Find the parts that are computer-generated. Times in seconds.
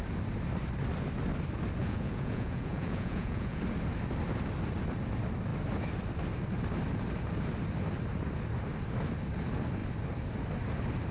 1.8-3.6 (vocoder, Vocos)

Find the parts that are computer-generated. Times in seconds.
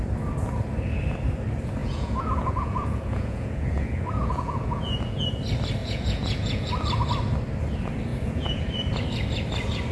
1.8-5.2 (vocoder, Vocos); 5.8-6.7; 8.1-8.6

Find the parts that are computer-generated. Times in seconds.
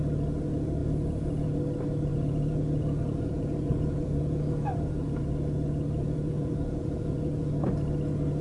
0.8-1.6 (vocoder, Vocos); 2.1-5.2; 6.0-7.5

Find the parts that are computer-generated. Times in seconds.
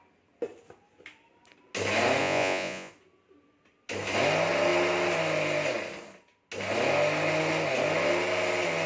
2.2-2.9 (vocoder, Vocos)